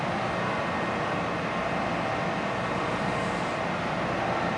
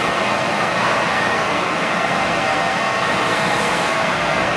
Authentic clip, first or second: first